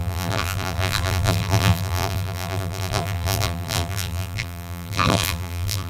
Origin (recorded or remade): remade